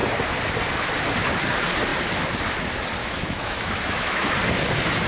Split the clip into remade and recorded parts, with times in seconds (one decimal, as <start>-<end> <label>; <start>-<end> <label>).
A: 0.0-3.0 recorded; 3.0-4.3 remade; 4.3-5.1 recorded